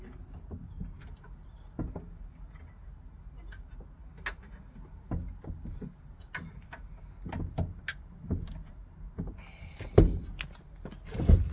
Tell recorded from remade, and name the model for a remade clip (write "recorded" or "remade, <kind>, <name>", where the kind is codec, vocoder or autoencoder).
recorded